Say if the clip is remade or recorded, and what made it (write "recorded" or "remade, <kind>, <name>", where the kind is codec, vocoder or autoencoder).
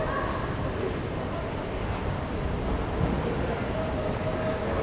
recorded